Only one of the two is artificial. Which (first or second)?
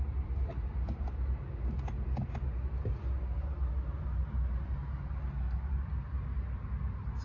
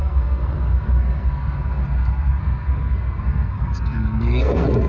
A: second